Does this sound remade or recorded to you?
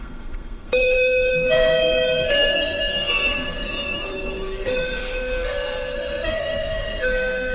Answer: remade